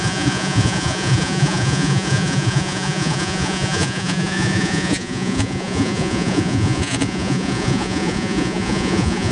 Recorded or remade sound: remade